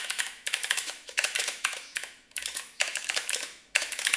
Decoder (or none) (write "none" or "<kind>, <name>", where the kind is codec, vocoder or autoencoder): autoencoder, DAC-VAE